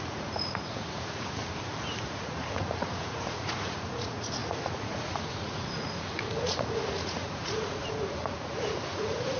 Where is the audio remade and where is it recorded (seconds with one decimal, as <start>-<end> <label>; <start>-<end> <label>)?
0.0-1.4 remade; 1.4-2.0 recorded; 2.0-9.4 remade